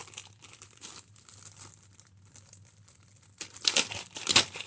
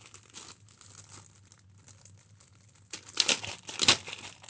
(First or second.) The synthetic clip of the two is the first